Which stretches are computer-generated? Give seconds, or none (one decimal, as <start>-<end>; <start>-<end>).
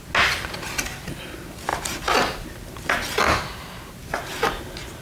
none